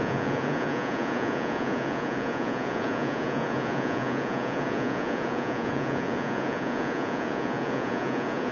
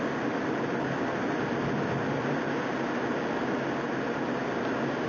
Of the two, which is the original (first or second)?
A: second